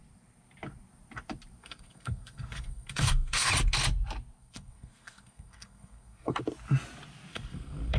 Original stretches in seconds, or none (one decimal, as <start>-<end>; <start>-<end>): 0.0-1.6; 3.5-4.4; 6.4-7.3